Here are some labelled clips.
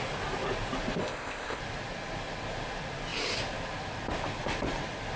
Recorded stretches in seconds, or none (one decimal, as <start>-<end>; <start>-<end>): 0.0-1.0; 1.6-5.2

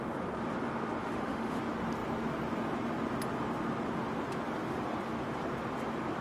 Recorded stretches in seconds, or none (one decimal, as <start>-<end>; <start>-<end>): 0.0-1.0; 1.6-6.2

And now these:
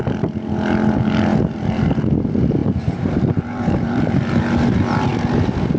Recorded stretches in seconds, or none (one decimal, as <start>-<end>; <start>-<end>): 0.0-2.6; 4.1-5.8

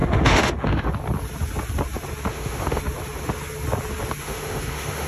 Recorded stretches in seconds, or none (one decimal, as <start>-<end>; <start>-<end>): 0.9-2.3; 2.8-4.2

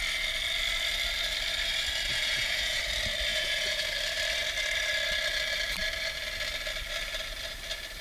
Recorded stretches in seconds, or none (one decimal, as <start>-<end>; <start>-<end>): 0.0-2.1; 2.8-3.3; 3.9-8.0

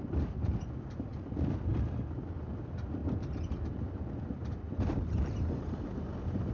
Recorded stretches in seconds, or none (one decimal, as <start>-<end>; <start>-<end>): 0.0-4.4

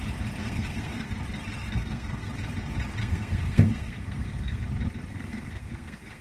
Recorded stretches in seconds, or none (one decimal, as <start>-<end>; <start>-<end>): 0.0-0.4; 1.1-1.6; 2.3-3.0; 4.6-5.1